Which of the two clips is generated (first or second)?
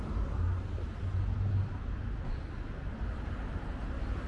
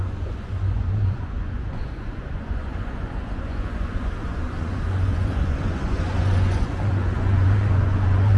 second